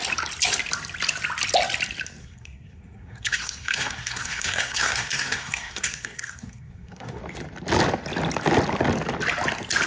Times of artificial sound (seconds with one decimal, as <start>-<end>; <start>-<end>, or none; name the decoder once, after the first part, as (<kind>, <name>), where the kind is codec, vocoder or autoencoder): 2.2-7.2 (codec, SNAC)